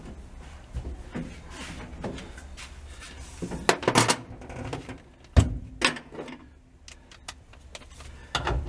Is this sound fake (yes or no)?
no